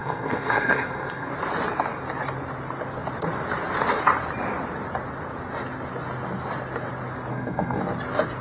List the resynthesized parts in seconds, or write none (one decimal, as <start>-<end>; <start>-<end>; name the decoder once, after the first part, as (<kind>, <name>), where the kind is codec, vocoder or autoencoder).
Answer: 0.0-1.3 (codec, SNAC); 7.3-7.8